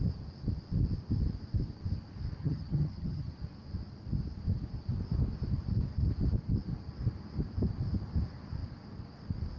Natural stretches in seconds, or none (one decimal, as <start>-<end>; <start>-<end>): 0.0-2.4; 3.3-9.6